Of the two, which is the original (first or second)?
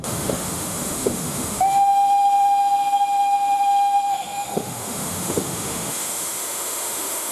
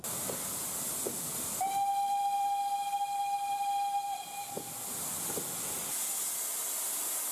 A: second